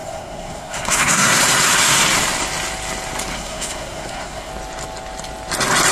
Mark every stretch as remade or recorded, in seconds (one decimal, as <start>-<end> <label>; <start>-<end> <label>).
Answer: 0.0-1.4 remade; 1.4-3.3 recorded; 3.3-4.5 remade; 4.5-5.9 recorded